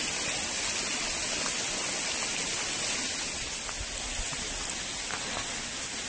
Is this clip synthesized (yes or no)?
no